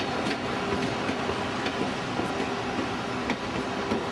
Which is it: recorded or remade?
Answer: recorded